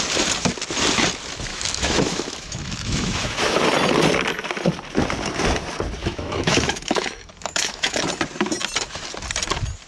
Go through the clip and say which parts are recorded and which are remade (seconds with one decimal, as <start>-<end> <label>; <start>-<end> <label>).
0.0-1.5 recorded; 1.5-3.4 remade; 3.4-6.0 recorded; 6.0-8.1 remade; 8.1-9.9 recorded

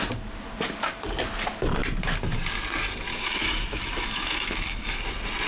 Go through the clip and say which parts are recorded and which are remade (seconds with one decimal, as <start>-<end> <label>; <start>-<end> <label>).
0.0-3.1 recorded; 3.1-5.0 remade; 5.0-5.5 recorded

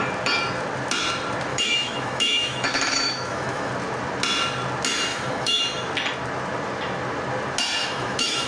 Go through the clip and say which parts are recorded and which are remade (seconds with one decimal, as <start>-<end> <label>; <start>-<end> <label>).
0.0-1.5 recorded; 1.5-3.7 remade; 3.7-5.1 recorded; 5.1-5.6 remade; 5.6-7.8 recorded; 7.8-8.5 remade

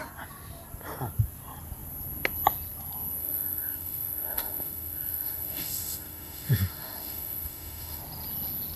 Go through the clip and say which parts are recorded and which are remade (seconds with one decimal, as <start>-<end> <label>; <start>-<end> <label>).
0.0-3.2 recorded; 3.2-8.0 remade; 8.0-8.8 recorded